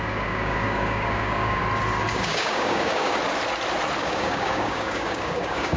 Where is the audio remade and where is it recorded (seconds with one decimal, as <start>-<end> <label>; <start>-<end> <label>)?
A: 0.0-1.6 remade; 1.6-2.1 recorded; 2.1-3.2 remade; 3.2-4.0 recorded; 4.0-5.8 remade